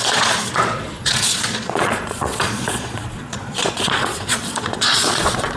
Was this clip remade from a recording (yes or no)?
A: yes